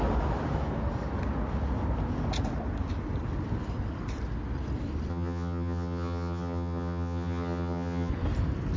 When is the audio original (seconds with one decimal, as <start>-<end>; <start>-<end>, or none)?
0.0-5.1; 8.1-8.8